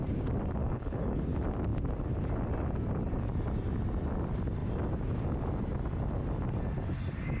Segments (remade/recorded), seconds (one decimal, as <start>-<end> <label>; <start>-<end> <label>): 0.0-0.6 recorded; 0.6-1.2 remade; 1.2-7.4 recorded